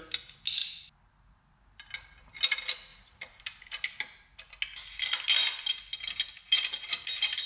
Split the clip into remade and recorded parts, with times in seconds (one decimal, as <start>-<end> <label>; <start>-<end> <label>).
0.0-7.5 recorded